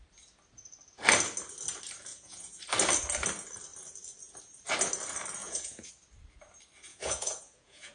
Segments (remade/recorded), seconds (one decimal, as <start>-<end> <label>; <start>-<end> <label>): 0.0-2.1 recorded; 2.1-2.6 remade; 2.6-5.4 recorded; 5.4-5.9 remade; 5.9-6.9 recorded; 6.9-7.9 remade